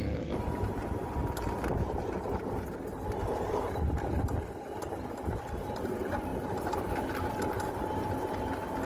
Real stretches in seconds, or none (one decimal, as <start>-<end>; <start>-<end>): 0.0-1.2; 5.6-8.8